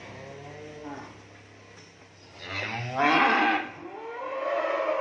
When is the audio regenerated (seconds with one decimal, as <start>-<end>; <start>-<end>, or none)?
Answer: none